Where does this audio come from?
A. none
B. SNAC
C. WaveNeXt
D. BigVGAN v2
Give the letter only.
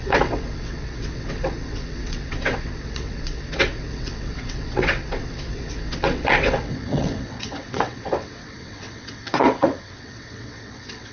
C